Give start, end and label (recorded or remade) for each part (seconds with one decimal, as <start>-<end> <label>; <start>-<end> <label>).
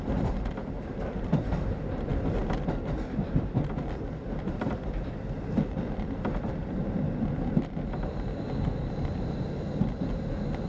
0.0-8.7 remade; 8.7-10.7 recorded